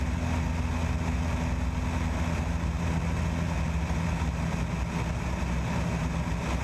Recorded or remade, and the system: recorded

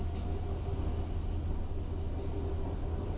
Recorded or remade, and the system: recorded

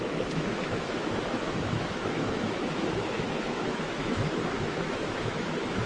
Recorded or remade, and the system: remade, autoencoder, DAC-VAE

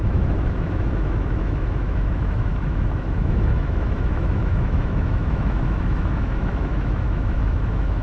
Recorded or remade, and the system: remade, autoencoder, DAC-VAE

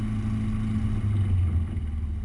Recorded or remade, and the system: recorded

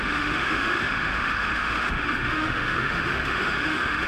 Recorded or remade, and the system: remade, autoencoder, DAC-VAE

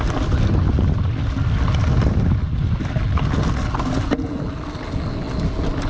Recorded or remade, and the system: recorded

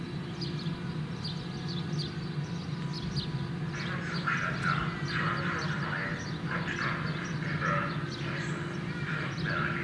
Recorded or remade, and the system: recorded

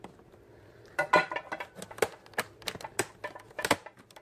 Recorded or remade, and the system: recorded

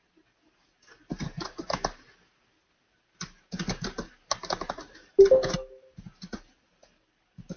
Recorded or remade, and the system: recorded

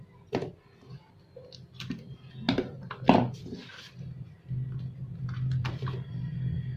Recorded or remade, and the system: recorded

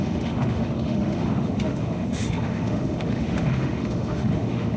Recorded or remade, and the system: remade, autoencoder, DAC-VAE